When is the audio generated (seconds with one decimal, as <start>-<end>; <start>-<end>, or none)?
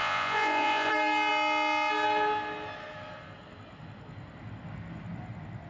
0.0-0.9